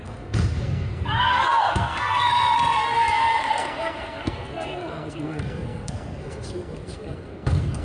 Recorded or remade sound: remade